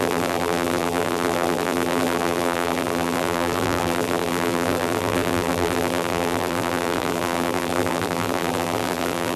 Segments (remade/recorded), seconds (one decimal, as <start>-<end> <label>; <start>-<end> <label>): 0.0-9.4 remade